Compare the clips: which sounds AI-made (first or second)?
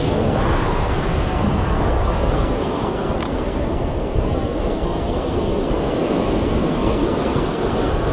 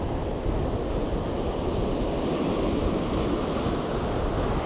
first